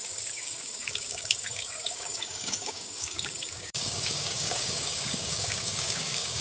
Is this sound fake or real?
fake